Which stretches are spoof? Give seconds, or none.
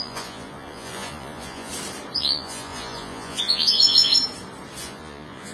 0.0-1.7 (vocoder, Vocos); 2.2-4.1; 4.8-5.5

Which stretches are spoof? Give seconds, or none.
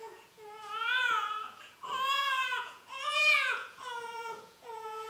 0.0-5.1 (vocoder, Vocos)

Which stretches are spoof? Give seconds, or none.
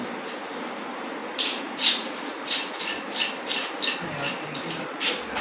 1.2-2.8 (vocoder, Vocos)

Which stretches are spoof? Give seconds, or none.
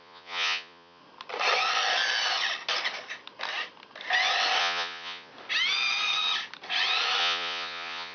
0.0-1.0 (vocoder, Vocos); 4.6-5.3; 7.2-8.1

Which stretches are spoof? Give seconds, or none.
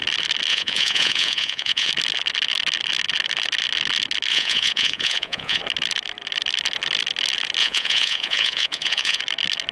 0.5-1.9 (vocoder, Vocos); 4.3-5.6; 7.6-9.2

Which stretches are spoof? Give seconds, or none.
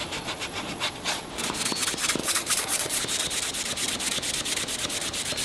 0.0-1.3 (vocoder, Vocos); 2.2-3.0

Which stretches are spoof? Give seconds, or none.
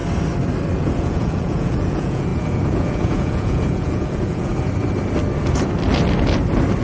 0.8-4.5 (vocoder, Vocos)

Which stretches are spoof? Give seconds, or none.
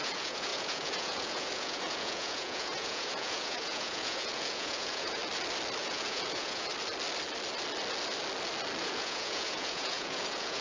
0.0-5.2 (vocoder, Vocos); 5.8-6.7; 8.8-10.6